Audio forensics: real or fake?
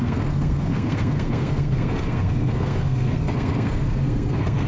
fake